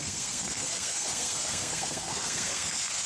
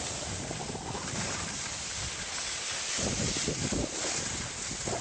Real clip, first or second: second